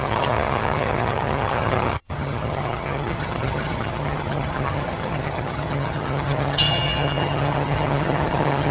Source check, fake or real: fake